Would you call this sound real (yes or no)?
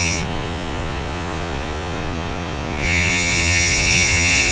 no